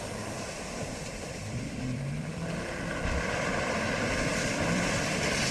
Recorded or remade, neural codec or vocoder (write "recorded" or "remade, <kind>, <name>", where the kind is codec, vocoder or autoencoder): remade, vocoder, BigVGAN v2